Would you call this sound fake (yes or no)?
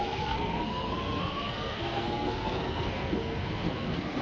yes